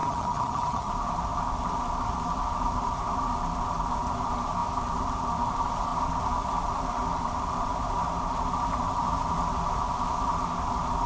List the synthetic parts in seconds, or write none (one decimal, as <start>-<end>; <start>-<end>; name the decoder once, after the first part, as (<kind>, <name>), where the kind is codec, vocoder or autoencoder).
0.0-0.9 (vocoder, HiFi-GAN)